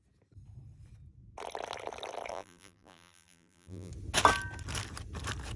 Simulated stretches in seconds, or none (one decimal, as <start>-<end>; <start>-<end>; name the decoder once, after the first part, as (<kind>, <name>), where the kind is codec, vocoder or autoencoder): 2.3-3.9 (vocoder, BigVGAN v2)